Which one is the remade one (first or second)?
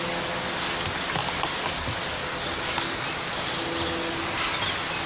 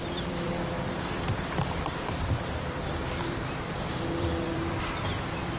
second